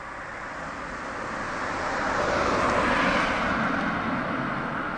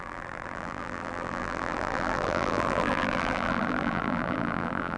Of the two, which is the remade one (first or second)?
second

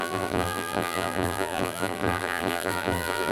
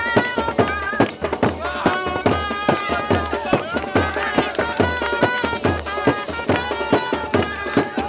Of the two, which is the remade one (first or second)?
first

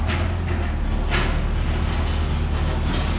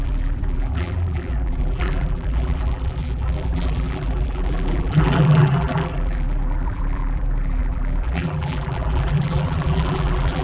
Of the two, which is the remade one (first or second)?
second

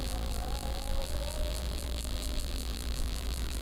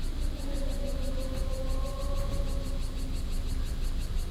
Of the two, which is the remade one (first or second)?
first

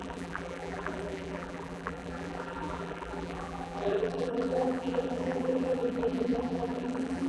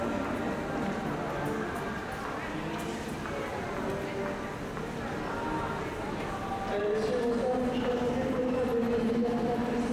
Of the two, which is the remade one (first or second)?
first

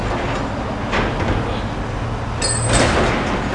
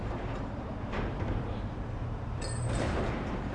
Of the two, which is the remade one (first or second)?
second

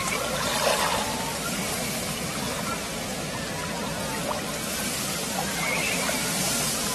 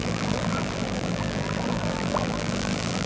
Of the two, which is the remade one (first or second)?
second